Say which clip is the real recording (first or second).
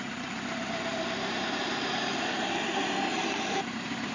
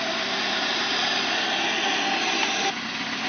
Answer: second